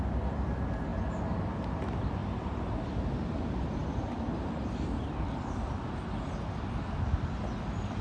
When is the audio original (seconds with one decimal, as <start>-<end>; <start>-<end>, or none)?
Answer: 0.0-8.0